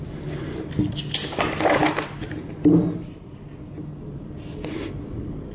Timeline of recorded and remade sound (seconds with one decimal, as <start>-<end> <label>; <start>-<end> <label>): 0.0-5.5 recorded